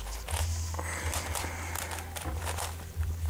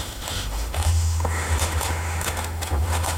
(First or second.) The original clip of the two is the first